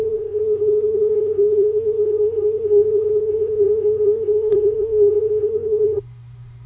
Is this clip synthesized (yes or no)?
yes